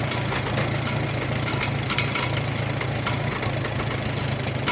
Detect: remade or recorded recorded